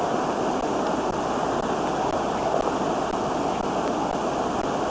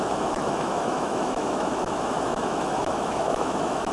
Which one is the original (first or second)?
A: first